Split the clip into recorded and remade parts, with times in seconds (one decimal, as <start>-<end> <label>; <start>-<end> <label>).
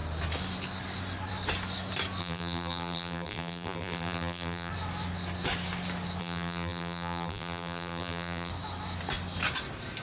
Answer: 0.0-2.2 recorded; 2.2-4.7 remade; 4.7-6.2 recorded; 6.2-8.5 remade; 8.5-10.0 recorded